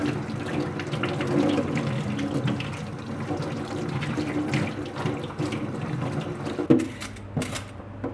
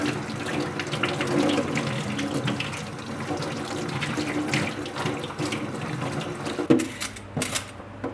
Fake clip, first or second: first